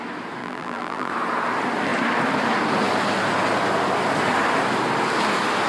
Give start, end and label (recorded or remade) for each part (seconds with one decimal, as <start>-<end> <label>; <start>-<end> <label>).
0.0-0.4 recorded; 0.4-1.1 remade; 1.1-5.7 recorded